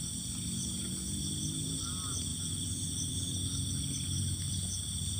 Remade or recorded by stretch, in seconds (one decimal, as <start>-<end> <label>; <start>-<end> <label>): 0.0-5.2 recorded